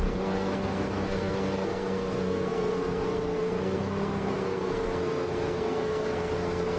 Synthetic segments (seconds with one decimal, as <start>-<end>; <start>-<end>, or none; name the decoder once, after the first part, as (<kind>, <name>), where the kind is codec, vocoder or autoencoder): 0.0-6.8 (codec, SNAC)